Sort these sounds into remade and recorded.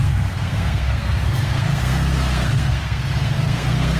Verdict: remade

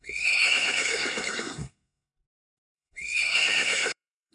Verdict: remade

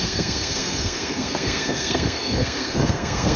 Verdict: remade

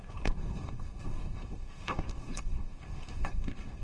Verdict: remade